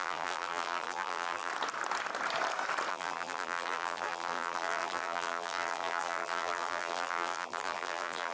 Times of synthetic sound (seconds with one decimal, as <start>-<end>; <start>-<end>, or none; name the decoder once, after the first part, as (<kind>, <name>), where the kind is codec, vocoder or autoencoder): 0.0-1.5 (vocoder, BigVGAN v2); 2.9-8.3